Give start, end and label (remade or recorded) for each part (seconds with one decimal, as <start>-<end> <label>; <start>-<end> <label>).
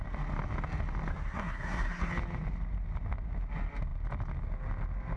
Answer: 0.0-1.1 recorded; 1.1-2.1 remade; 2.1-5.2 recorded